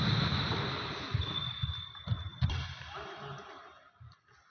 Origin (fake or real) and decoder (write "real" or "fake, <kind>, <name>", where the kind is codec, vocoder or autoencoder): fake, vocoder, BigVGAN v2